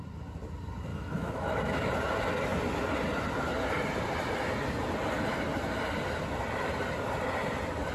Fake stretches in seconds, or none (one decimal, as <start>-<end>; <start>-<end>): 0.9-1.9